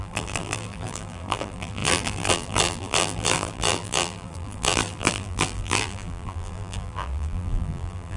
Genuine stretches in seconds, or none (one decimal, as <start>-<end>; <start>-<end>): none